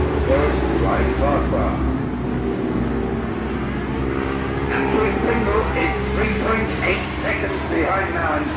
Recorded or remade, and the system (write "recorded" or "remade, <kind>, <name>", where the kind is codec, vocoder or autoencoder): recorded